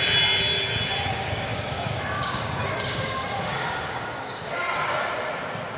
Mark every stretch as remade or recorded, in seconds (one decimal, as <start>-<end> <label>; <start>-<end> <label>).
0.0-1.1 recorded; 1.1-4.6 remade; 4.6-5.8 recorded